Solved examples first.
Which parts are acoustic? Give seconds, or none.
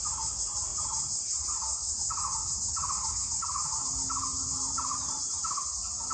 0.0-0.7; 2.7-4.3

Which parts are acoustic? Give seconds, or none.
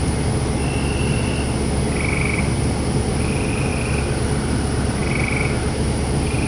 0.0-3.1; 3.7-4.2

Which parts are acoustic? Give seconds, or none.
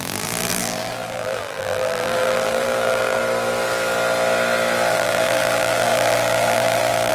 3.2-4.9